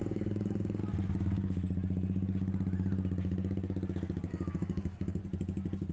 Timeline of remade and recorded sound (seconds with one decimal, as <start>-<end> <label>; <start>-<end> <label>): 0.0-0.8 remade; 0.8-4.3 recorded; 4.3-5.2 remade; 5.2-5.9 recorded